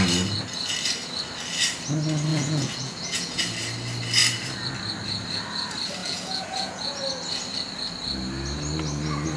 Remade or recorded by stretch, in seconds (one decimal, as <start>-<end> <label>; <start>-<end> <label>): 0.0-2.3 recorded; 2.3-3.4 remade; 3.4-6.0 recorded; 6.0-7.0 remade; 7.0-9.4 recorded